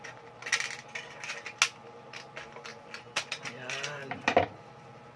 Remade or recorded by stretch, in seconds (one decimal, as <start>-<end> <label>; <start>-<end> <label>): 0.0-2.7 recorded; 2.7-3.3 remade; 3.3-5.2 recorded